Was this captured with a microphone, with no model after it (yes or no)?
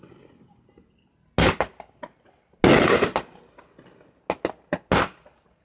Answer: yes